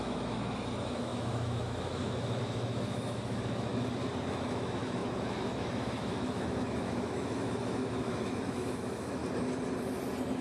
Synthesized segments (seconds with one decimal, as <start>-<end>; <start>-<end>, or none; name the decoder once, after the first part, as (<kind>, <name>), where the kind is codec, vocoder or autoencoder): 0.0-3.7 (autoencoder, DAC-VAE); 4.3-9.2